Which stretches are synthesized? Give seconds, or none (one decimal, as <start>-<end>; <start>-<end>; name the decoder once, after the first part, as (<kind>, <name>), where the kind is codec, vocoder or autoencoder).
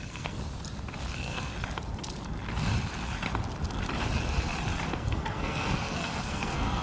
0.0-0.4 (codec, SNAC); 1.1-1.5; 4.9-6.8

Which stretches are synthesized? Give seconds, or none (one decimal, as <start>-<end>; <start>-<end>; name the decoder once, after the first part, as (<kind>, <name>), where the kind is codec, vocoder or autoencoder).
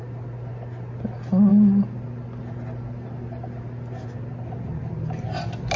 none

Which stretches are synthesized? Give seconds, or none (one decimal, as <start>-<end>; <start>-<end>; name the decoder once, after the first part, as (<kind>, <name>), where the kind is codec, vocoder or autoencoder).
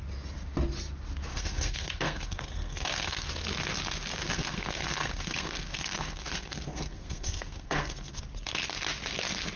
1.3-3.3 (codec, SNAC); 4.2-8.2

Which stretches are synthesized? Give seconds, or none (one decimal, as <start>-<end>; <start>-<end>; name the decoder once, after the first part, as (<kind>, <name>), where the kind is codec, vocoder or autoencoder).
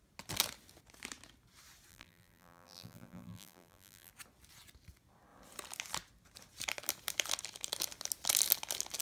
1.9-4.1 (vocoder, BigVGAN v2)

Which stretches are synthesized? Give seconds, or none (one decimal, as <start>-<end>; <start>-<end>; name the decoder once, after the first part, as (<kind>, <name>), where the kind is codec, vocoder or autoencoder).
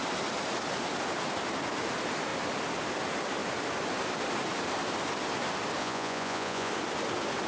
5.8-6.7 (vocoder, Vocos)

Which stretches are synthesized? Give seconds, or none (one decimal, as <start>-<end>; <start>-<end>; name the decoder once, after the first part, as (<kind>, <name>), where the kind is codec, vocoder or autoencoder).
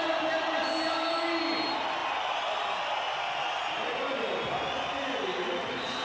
none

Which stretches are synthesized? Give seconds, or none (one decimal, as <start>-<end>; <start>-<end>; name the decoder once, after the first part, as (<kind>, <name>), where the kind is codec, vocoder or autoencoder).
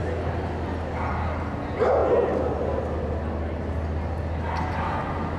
none